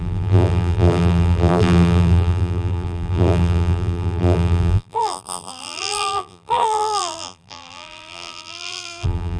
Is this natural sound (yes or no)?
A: no